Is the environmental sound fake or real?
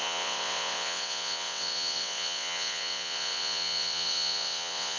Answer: fake